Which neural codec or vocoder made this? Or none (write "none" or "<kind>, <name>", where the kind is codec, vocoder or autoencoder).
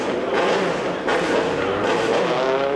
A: none